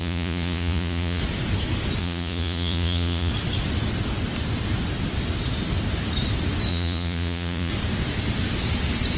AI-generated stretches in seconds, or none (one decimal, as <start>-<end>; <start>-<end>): 0.0-1.2; 2.0-3.3; 6.7-7.7